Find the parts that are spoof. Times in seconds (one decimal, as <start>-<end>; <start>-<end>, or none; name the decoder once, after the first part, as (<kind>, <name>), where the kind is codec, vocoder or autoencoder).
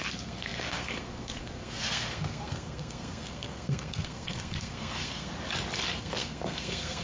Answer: 0.0-5.3 (codec, SNAC); 6.0-7.0